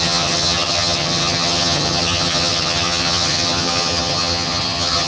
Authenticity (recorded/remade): remade